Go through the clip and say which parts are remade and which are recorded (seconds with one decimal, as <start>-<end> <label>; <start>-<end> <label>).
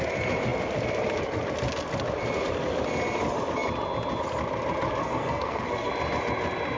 0.0-5.0 recorded; 5.0-5.9 remade; 5.9-6.8 recorded